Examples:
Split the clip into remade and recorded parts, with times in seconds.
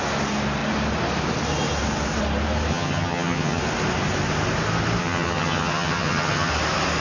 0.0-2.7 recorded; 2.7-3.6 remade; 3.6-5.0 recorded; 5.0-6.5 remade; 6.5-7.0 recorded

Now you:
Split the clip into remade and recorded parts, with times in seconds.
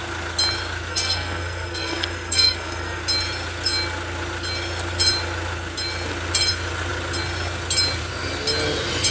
0.0-0.9 recorded; 0.9-3.0 remade; 3.0-9.1 recorded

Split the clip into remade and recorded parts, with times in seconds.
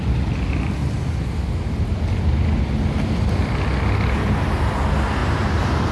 0.0-5.9 recorded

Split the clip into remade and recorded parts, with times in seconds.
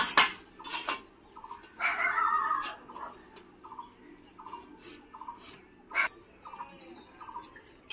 0.0-7.9 recorded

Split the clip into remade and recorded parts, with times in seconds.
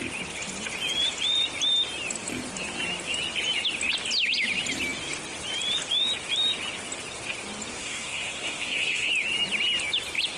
0.0-7.8 recorded; 7.8-9.1 remade; 9.1-10.4 recorded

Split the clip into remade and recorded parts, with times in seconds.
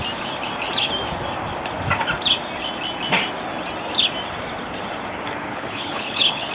0.0-5.5 recorded; 5.5-6.5 remade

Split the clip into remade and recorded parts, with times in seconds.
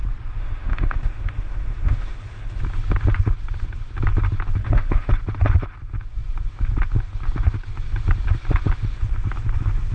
0.0-0.4 recorded; 0.4-2.6 remade; 2.6-4.6 recorded; 4.6-5.1 remade; 5.1-9.9 recorded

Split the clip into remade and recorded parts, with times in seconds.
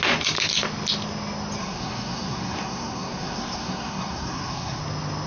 0.0-1.6 recorded; 1.6-4.8 remade; 4.8-5.3 recorded